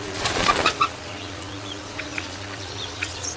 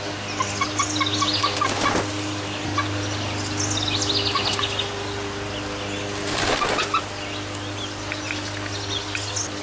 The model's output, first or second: first